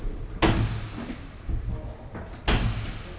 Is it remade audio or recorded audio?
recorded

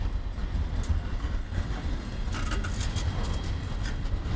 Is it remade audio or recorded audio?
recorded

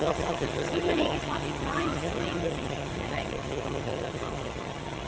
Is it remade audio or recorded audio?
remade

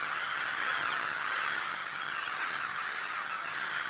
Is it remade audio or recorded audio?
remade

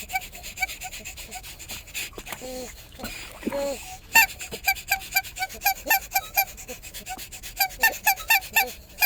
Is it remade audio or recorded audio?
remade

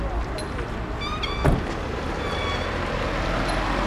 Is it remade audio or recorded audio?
recorded